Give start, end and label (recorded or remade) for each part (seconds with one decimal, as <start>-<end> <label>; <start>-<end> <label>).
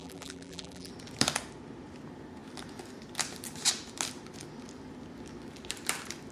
0.0-0.9 remade; 0.9-6.3 recorded